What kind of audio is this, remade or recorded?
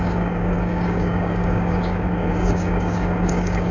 remade